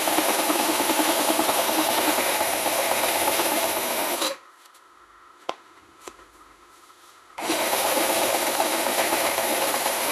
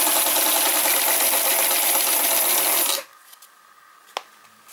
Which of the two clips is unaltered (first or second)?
second